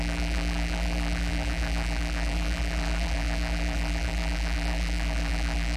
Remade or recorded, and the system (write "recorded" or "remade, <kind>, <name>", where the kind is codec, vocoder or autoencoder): remade, vocoder, BigVGAN v2